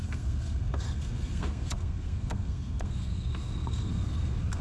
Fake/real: fake